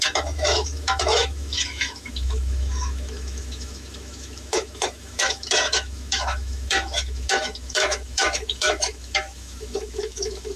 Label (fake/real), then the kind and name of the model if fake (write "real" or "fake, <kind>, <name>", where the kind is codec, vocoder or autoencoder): fake, autoencoder, DAC-VAE